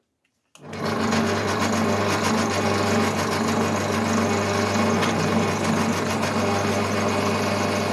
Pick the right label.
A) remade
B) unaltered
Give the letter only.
B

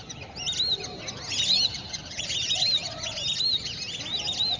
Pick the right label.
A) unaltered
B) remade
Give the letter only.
A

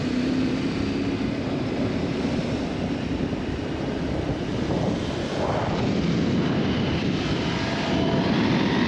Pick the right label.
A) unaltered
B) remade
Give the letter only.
B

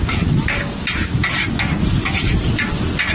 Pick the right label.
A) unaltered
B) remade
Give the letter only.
A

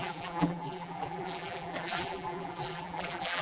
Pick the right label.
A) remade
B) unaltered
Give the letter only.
A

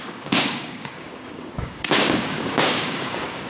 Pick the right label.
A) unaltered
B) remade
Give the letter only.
B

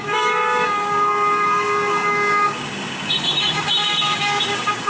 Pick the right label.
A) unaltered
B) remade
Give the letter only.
B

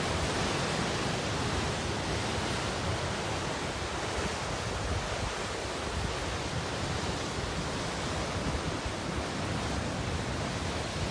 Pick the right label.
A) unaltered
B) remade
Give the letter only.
A